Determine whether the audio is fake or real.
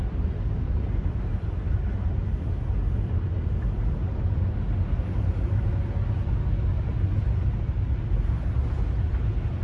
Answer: real